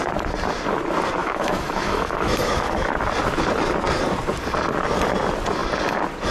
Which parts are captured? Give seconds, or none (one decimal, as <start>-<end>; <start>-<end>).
0.0-1.2; 2.9-6.3